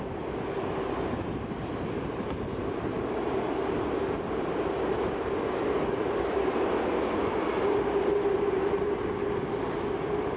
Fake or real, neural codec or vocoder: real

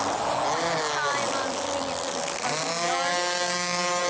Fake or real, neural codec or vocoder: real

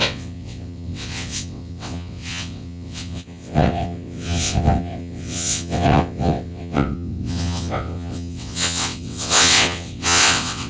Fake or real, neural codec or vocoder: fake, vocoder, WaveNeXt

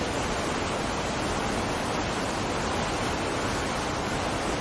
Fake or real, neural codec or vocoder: real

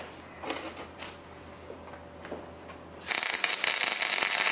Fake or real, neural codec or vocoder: real